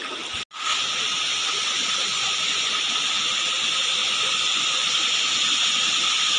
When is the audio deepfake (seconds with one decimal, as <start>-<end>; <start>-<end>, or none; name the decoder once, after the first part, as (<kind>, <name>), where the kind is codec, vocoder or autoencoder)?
2.1-2.7 (vocoder, Vocos); 4.0-5.1